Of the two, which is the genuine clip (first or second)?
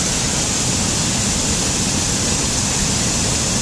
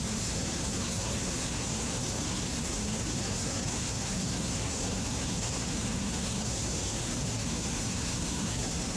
first